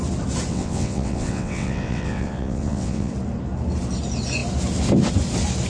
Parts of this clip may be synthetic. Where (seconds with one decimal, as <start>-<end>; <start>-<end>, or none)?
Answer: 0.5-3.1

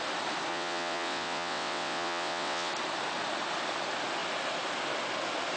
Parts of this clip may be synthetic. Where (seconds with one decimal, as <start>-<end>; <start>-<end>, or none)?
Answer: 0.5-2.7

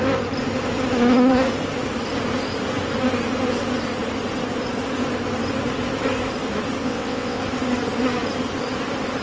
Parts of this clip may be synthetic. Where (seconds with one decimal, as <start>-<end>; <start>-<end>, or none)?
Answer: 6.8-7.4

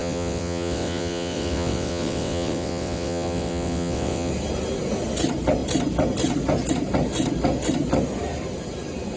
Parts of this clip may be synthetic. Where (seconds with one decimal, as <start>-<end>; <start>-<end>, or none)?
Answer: 0.0-4.3